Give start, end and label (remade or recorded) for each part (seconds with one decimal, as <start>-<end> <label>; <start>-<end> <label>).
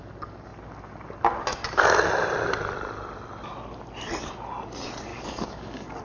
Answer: 0.0-5.1 recorded; 5.1-6.0 remade